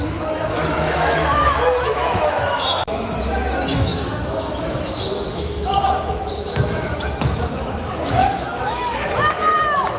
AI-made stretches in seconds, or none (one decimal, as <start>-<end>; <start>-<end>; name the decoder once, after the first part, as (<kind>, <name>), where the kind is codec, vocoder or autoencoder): 0.0-10.0 (autoencoder, DAC-VAE)